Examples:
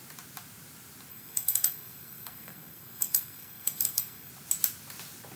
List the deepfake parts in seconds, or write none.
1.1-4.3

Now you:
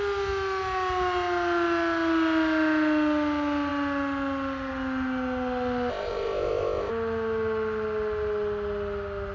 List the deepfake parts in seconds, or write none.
5.9-6.9